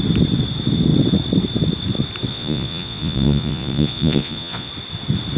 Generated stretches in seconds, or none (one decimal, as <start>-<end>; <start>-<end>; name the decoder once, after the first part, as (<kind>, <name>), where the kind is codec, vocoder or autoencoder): 2.3-4.7 (vocoder, Vocos)